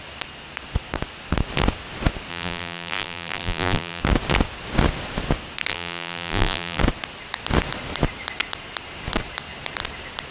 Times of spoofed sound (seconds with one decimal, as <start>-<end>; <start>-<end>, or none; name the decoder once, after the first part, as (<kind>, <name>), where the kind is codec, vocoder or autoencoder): 2.3-4.0 (vocoder, BigVGAN v2); 5.7-6.8

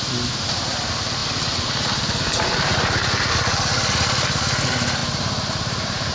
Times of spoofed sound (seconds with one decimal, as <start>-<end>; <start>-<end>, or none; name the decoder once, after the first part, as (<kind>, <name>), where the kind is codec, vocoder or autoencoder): 5.0-6.1 (vocoder, BigVGAN v2)

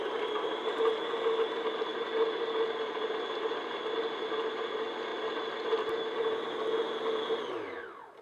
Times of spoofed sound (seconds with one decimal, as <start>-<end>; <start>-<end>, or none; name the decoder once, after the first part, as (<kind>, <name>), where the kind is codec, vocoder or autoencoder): none

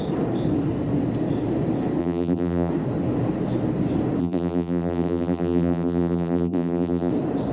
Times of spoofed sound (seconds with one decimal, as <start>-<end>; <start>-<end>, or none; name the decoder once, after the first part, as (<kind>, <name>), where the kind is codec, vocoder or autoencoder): 2.0-2.7 (vocoder, BigVGAN v2); 4.2-7.1

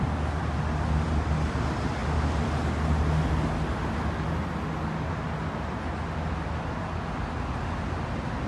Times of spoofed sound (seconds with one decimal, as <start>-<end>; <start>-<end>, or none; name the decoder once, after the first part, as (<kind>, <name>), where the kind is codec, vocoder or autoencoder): none